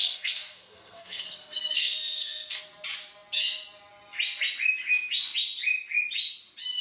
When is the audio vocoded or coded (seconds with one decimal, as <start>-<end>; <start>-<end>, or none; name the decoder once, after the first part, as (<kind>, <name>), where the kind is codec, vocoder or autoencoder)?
0.0-2.6 (codec, SNAC)